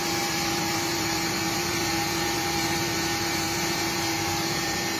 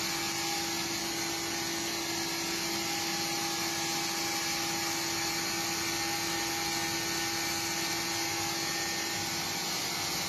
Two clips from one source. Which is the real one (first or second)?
second